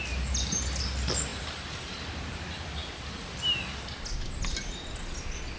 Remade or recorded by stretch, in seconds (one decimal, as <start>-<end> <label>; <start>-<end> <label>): 0.0-1.3 recorded; 1.3-2.4 remade; 2.4-5.6 recorded